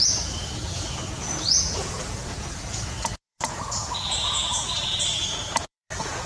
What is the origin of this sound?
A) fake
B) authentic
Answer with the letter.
A